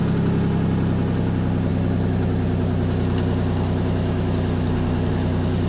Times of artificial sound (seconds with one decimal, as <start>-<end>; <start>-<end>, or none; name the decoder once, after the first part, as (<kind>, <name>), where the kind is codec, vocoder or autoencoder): none